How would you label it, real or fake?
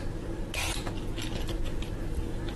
real